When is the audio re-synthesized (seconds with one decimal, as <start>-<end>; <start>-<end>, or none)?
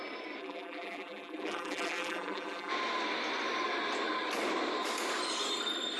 0.4-2.7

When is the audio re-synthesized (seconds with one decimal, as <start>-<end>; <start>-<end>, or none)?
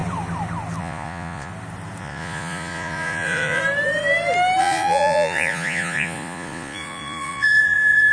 0.8-1.5; 2.0-3.6; 4.6-8.1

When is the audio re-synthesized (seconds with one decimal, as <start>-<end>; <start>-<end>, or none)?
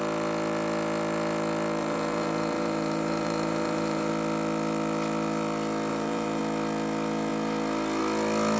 1.8-4.1; 5.9-6.4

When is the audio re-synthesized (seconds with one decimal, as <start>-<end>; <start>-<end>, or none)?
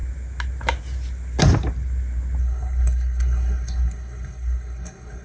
2.4-5.2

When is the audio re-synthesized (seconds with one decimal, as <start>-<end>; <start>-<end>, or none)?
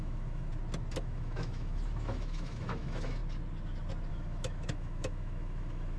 0.0-0.5; 1.0-3.2; 4.1-6.0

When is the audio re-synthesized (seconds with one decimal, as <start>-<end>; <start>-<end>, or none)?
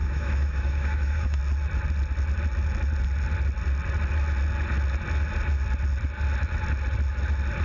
0.0-1.4